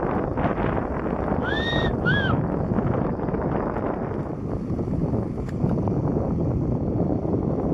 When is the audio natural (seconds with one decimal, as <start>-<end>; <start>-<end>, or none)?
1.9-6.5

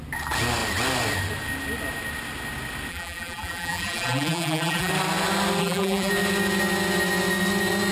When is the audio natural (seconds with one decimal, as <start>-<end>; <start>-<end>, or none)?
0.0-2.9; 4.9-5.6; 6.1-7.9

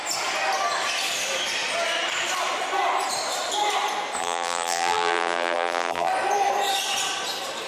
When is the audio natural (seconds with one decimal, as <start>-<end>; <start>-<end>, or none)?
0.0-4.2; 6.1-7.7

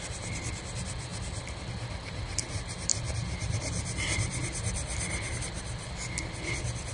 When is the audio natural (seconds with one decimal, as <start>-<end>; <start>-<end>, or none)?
1.1-2.1